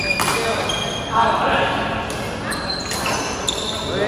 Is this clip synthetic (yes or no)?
no